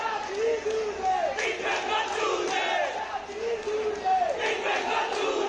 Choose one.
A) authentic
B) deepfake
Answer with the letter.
A